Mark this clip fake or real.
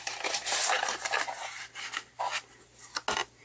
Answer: real